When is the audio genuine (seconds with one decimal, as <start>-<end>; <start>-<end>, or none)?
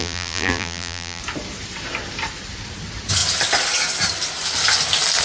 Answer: 1.2-5.2